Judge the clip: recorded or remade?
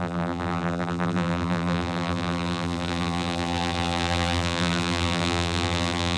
remade